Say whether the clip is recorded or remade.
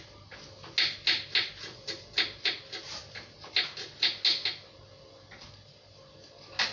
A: recorded